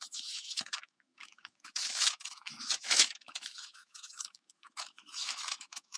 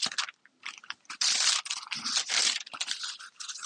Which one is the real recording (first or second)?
second